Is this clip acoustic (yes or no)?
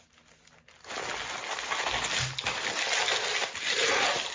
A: yes